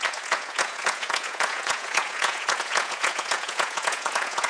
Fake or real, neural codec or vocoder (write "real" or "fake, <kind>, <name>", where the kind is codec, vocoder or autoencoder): fake, vocoder, Vocos